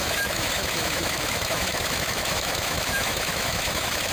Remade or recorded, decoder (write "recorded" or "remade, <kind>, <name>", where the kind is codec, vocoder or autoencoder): remade, autoencoder, DAC-VAE